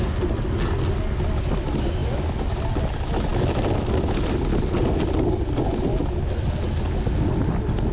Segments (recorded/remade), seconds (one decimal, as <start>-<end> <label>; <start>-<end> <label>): 0.0-7.9 recorded